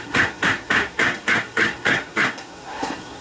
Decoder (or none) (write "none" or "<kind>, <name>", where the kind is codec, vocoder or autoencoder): codec, SNAC